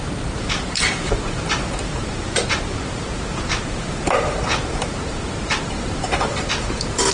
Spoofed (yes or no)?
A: yes